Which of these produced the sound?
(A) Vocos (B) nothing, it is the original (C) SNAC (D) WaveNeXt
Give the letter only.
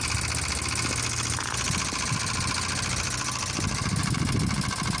B